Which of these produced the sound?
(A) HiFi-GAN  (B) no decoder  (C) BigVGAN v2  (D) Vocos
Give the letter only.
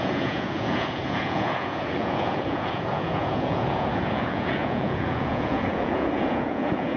D